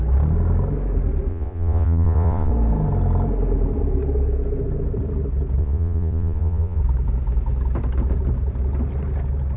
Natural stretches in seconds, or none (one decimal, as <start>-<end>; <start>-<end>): 0.0-1.3; 2.5-5.6; 6.8-9.6